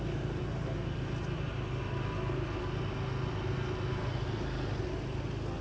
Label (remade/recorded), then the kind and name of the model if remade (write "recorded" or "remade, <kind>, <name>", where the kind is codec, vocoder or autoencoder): recorded